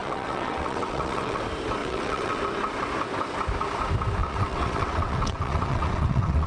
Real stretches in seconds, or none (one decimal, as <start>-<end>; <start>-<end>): 1.4-1.8; 2.4-4.2